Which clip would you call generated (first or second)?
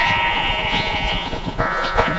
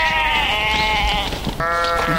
first